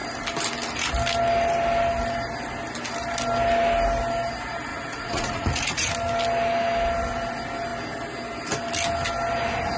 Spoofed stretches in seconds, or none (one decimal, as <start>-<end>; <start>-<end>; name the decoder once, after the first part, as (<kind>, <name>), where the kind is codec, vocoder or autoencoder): 4.7-5.9 (vocoder, Vocos)